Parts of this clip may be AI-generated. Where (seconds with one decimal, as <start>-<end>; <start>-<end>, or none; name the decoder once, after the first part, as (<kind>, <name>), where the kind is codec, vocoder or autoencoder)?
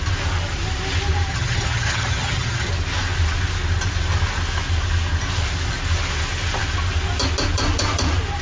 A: 1.3-2.7 (vocoder, HiFi-GAN)